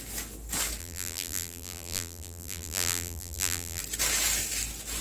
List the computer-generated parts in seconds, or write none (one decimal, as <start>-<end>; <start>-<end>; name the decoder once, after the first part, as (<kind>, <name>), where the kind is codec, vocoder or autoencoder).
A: 0.8-3.8 (vocoder, BigVGAN v2)